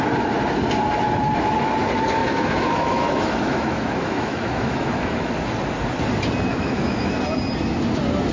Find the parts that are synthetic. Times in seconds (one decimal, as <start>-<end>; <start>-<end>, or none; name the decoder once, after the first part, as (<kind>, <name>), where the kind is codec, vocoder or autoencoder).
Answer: 2.2-5.3 (autoencoder, DAC-VAE); 6.5-7.1

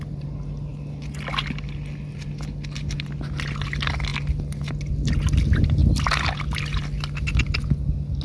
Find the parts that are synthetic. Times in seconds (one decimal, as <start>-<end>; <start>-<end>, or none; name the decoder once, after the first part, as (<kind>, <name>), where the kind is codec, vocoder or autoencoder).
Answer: none